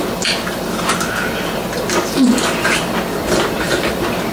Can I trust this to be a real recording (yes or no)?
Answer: no